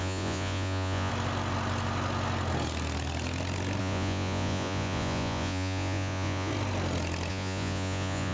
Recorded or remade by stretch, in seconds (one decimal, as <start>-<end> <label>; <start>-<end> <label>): 0.0-1.1 remade; 1.1-3.8 recorded; 3.8-6.5 remade; 6.5-7.3 recorded; 7.3-8.3 remade